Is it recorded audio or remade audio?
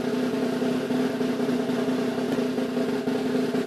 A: recorded